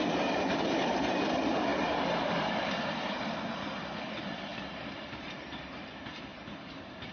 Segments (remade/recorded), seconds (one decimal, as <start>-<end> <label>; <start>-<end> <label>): 0.0-4.5 recorded; 4.5-5.8 remade; 5.8-7.1 recorded